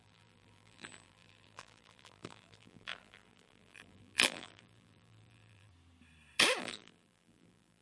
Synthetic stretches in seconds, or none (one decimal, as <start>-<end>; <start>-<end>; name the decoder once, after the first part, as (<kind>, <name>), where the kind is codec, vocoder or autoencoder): 0.0-5.7 (vocoder, BigVGAN v2); 6.6-7.8